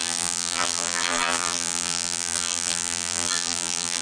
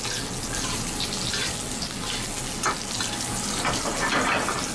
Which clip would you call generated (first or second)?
first